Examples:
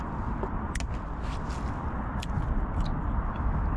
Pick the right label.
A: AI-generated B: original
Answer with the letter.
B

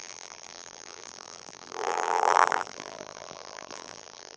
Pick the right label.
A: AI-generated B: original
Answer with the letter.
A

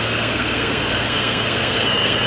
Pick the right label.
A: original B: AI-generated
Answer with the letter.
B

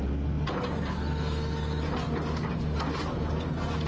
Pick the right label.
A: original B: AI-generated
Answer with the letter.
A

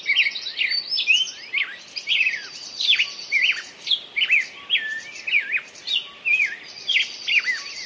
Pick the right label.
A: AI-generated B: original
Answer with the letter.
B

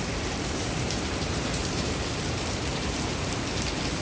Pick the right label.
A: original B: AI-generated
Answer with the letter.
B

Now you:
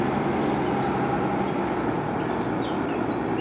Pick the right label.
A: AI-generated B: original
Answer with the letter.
B